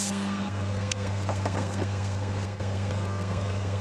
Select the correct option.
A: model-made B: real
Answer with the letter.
A